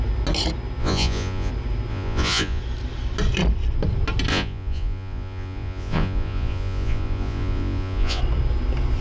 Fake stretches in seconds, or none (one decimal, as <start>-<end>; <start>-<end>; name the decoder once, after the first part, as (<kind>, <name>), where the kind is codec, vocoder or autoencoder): 0.8-1.5 (vocoder, Vocos); 1.9-2.6; 4.3-8.2